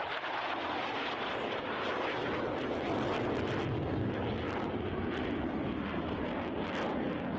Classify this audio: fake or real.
real